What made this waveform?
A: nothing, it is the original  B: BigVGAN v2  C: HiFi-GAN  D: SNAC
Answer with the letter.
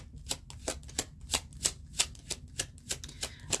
A